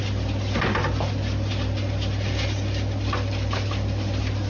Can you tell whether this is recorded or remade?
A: recorded